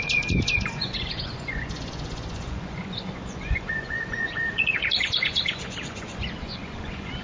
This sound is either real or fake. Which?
fake